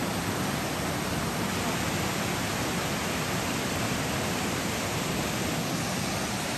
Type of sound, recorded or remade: recorded